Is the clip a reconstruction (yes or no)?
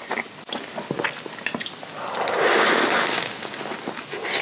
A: no